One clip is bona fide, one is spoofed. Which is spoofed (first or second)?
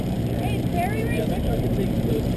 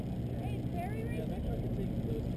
first